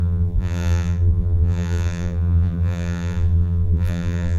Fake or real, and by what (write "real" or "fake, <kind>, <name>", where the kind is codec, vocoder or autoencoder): fake, vocoder, BigVGAN v2